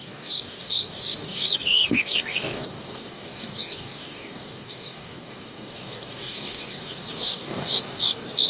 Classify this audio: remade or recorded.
remade